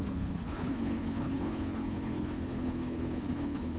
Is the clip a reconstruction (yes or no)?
yes